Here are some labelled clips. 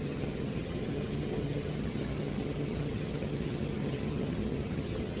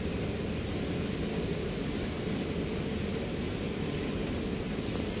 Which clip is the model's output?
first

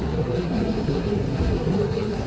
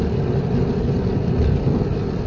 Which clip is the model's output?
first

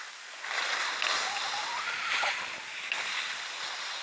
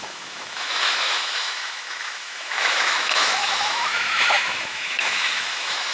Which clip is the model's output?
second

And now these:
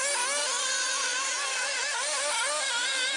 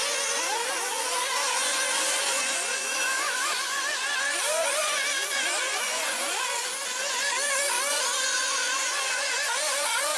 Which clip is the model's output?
second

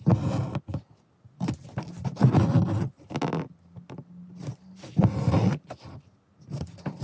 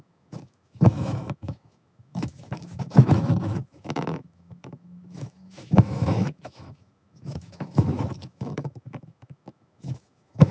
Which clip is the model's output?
second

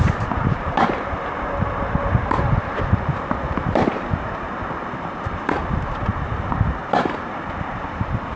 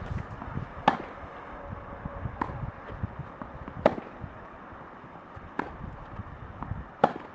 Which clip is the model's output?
first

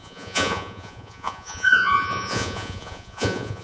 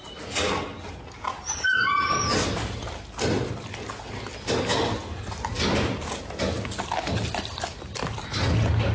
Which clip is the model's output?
first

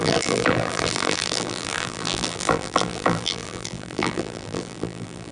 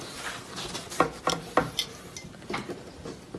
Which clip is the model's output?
first